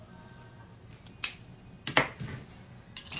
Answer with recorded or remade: recorded